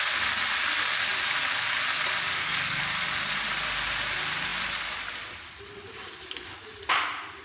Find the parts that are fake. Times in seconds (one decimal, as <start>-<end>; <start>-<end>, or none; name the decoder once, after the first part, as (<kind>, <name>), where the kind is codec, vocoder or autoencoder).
2.3-2.8 (codec, SNAC)